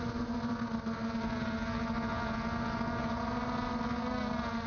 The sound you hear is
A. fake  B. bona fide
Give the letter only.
B